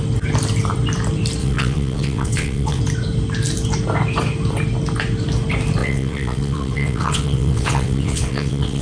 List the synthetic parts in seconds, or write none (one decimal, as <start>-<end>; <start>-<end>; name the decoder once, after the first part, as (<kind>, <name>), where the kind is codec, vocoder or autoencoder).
1.4-2.8 (vocoder, WaveNeXt); 5.8-8.8